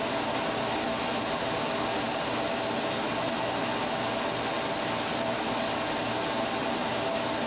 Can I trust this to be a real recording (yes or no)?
yes